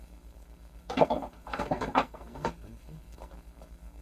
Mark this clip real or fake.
fake